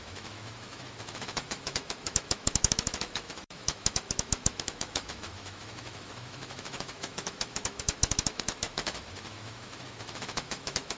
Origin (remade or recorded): remade